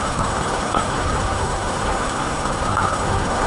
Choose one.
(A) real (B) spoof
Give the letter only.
B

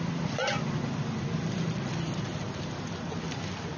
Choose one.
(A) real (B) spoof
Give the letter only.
A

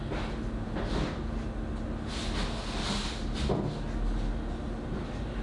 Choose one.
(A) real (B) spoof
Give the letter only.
A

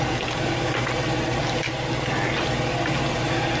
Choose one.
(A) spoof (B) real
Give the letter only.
B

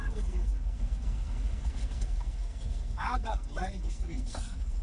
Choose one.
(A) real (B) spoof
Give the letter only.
B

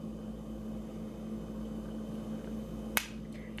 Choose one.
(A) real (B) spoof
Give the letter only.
A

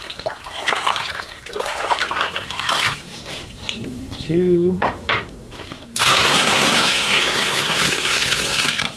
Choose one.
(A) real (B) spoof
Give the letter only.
B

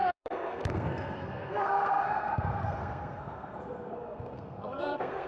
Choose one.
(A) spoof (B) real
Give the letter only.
A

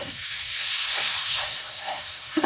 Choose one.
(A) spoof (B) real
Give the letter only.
A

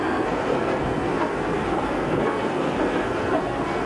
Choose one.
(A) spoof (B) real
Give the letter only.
A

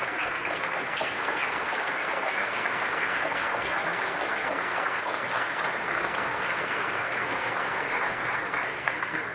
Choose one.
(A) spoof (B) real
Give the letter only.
A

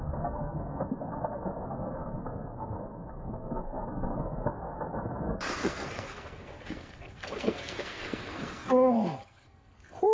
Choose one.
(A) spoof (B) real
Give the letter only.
A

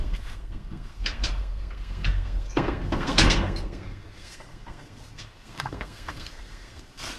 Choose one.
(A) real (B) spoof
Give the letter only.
B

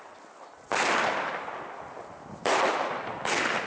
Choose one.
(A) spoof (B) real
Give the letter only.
B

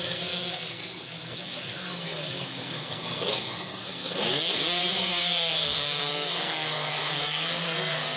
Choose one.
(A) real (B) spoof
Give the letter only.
B